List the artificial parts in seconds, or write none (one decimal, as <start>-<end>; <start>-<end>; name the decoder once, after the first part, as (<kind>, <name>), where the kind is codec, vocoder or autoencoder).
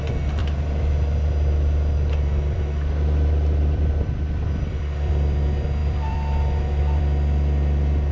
0.4-5.1 (vocoder, BigVGAN v2); 5.8-7.0